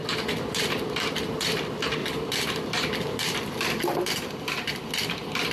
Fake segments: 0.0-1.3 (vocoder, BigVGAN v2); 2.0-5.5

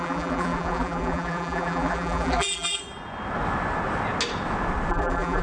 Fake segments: 0.0-2.8 (vocoder, BigVGAN v2); 4.9-5.4

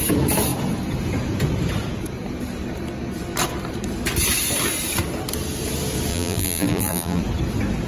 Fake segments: 6.1-7.2 (vocoder, BigVGAN v2)

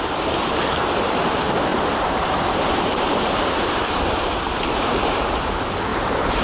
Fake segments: 1.7-5.5 (vocoder, BigVGAN v2); 5.9-6.4

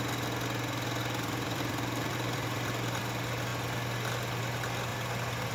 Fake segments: 1.0-3.0 (vocoder, BigVGAN v2); 4.9-5.5